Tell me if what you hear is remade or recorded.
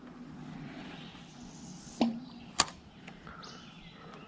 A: recorded